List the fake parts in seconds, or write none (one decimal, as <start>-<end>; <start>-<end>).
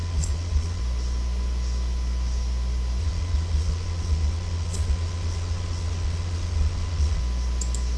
0.0-0.8; 3.0-7.2